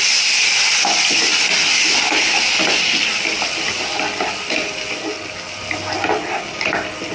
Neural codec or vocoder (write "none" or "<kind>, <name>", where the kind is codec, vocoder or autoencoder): none